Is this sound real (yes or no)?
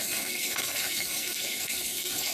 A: no